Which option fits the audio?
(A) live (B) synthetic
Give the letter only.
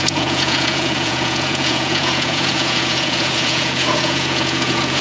B